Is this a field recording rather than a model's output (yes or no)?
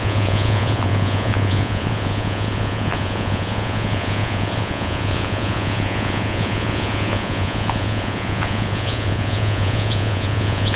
no